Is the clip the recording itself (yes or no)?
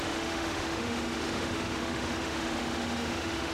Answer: no